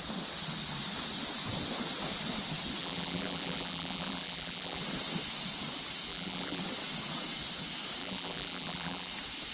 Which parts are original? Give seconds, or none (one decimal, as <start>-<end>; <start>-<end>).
0.0-2.8; 4.8-6.1; 6.6-8.0; 9.1-9.5